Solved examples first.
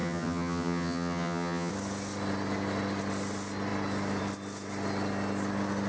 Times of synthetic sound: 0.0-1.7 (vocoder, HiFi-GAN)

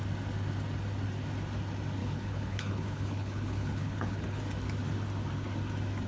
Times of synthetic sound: 2.0-4.4 (codec, HILCodec)

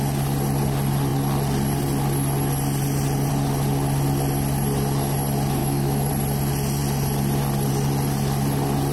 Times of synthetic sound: 5.6-6.1 (autoencoder, DAC-VAE)

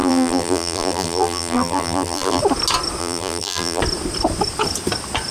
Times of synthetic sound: 0.0-2.4 (vocoder, BigVGAN v2); 3.0-3.8

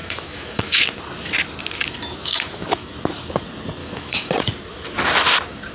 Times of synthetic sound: 0.0-0.8 (autoencoder, DAC-VAE); 2.2-2.9; 3.8-4.3

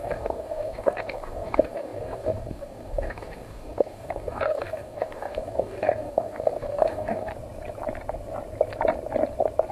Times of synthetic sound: 0.0-7.3 (codec, DAC)

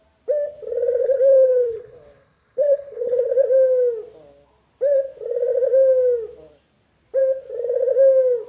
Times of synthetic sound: 1.0-3.3 (codec, HILCodec)

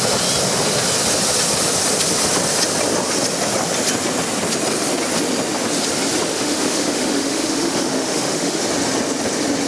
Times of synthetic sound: 6.3-8.6 (autoencoder, DAC-VAE)